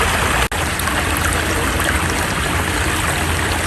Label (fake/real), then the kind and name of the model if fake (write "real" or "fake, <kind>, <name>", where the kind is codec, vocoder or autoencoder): real